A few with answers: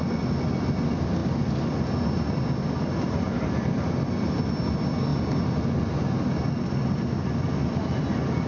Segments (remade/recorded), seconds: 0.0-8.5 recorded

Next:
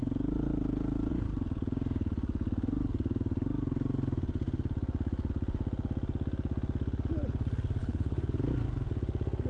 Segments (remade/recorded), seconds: 0.0-7.8 recorded; 7.8-8.3 remade; 8.3-9.5 recorded

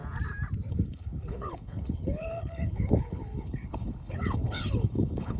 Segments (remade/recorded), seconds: 0.0-0.7 recorded; 0.7-5.4 remade

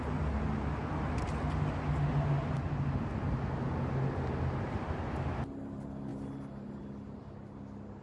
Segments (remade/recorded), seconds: 0.0-8.0 recorded

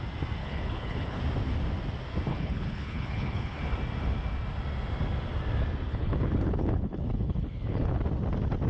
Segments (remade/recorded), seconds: 0.0-0.4 recorded; 0.4-1.2 remade; 1.2-2.3 recorded; 2.3-3.6 remade; 3.6-5.9 recorded; 5.9-8.0 remade; 8.0-8.7 recorded

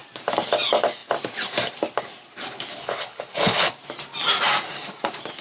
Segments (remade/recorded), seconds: 0.0-2.8 recorded; 2.8-3.7 remade; 3.7-5.4 recorded

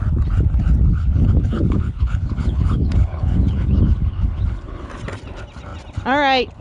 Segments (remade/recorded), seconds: 0.0-0.9 recorded; 0.9-4.9 remade; 4.9-6.6 recorded

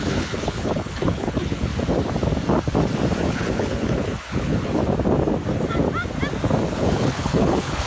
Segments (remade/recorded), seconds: 0.0-1.7 remade; 1.7-3.2 recorded; 3.2-4.8 remade; 4.8-6.7 recorded; 6.7-7.9 remade